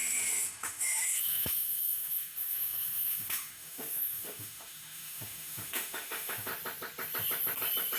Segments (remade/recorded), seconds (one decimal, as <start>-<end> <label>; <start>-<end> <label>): 0.0-6.5 remade; 6.5-8.0 recorded

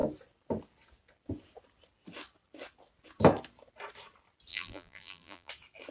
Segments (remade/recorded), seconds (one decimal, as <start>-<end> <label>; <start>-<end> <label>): 0.0-4.5 recorded; 4.5-5.5 remade; 5.5-5.9 recorded

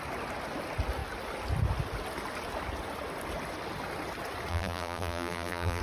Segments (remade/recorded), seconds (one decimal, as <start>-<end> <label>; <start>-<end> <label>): 0.0-4.5 recorded; 4.5-5.8 remade

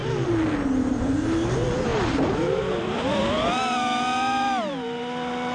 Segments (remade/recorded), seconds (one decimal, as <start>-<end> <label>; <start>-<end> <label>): 0.0-1.9 recorded; 1.9-3.2 remade; 3.2-5.5 recorded

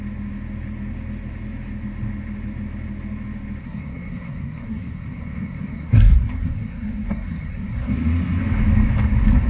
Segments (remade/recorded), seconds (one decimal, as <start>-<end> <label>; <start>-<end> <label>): 0.0-3.6 recorded; 3.6-8.4 remade; 8.4-9.5 recorded

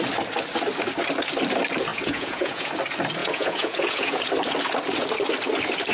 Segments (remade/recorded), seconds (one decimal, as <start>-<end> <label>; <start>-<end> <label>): 0.0-1.9 recorded; 1.9-2.7 remade; 2.7-3.2 recorded; 3.2-4.2 remade; 4.2-5.9 recorded

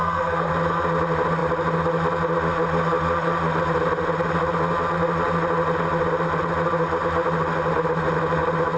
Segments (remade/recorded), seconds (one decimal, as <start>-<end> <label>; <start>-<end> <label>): 0.0-0.5 remade; 0.5-8.8 recorded

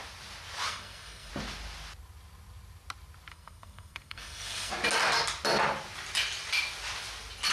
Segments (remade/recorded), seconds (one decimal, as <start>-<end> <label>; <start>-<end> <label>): 0.0-0.7 recorded; 0.7-1.3 remade; 1.3-3.3 recorded; 3.3-4.7 remade; 4.7-7.5 recorded